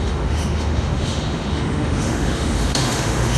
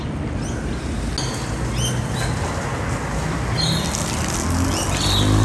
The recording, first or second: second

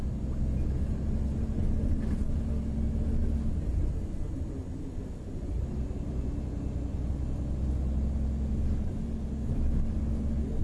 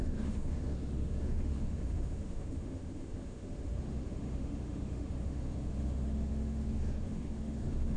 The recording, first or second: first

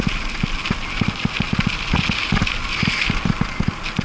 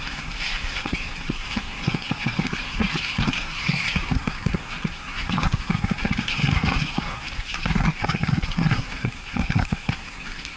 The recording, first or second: first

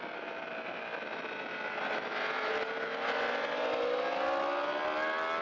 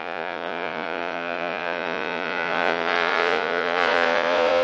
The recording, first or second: first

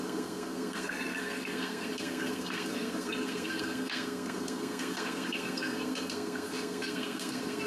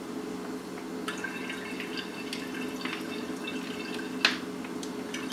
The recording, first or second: second